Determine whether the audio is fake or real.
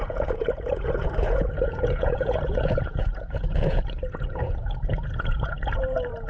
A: fake